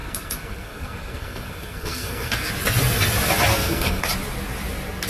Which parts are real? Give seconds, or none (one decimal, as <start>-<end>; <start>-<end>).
2.5-3.5; 4.1-5.1